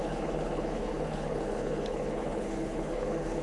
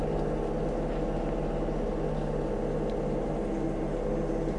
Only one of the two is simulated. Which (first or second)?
first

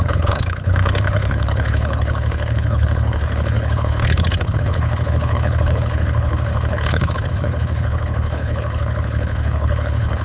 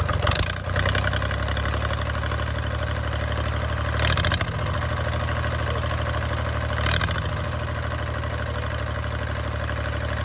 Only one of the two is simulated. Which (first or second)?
first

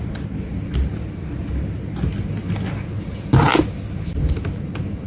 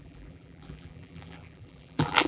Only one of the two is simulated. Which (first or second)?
second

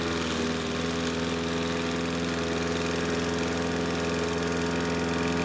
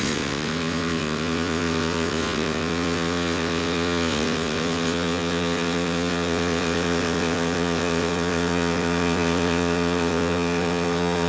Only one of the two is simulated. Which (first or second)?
second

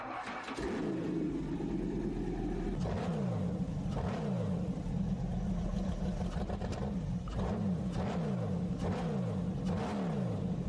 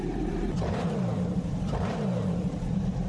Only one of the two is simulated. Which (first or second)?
second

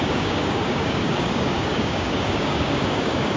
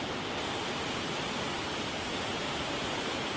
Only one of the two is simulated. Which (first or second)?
first